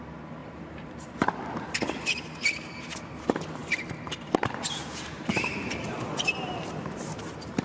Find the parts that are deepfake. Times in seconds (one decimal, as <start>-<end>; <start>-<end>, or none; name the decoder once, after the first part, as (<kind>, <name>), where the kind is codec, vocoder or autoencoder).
0.4-1.4 (vocoder, BigVGAN v2)